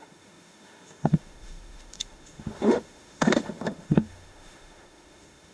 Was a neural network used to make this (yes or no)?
yes